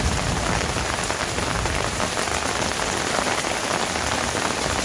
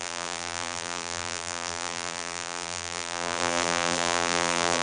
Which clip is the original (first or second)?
first